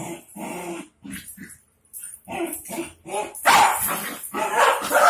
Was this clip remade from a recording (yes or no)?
no